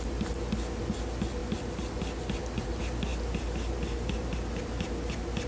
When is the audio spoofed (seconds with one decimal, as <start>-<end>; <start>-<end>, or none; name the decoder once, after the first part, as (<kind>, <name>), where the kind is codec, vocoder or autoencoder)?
3.1-4.5 (vocoder, BigVGAN v2)